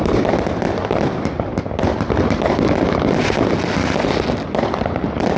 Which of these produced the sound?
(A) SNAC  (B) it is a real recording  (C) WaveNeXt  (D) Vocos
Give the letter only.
B